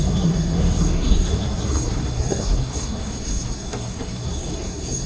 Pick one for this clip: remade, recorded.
remade